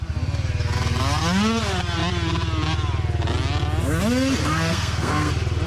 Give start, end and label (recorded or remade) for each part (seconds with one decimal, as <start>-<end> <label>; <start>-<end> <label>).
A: 0.0-4.4 recorded; 4.4-5.3 remade; 5.3-5.7 recorded

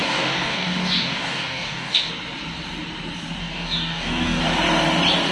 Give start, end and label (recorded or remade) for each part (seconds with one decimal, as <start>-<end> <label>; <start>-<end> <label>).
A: 0.0-2.1 remade; 2.1-3.4 recorded; 3.4-4.4 remade; 4.4-5.3 recorded

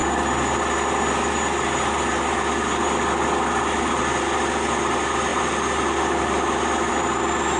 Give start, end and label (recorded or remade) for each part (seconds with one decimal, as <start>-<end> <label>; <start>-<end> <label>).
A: 0.0-7.6 recorded

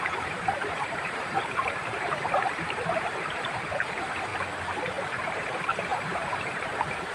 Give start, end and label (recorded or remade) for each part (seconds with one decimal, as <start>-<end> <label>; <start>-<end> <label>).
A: 0.0-4.3 remade; 4.3-5.3 recorded; 5.3-7.1 remade

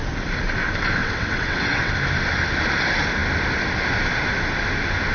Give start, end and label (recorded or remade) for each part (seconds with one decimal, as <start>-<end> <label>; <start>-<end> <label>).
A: 0.0-1.0 recorded; 1.0-1.9 remade; 1.9-5.1 recorded

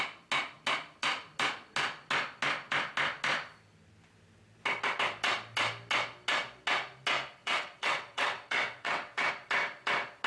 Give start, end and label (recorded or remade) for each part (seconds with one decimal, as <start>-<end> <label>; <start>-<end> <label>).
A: 0.0-7.4 recorded; 7.4-9.3 remade; 9.3-10.3 recorded